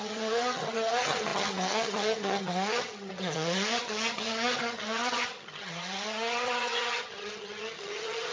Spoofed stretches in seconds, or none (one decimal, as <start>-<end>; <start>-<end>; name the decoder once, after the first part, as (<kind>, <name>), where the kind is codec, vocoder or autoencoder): 0.0-8.3 (vocoder, HiFi-GAN)